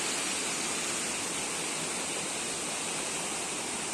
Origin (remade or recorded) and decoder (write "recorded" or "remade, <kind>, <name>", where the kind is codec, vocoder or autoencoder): recorded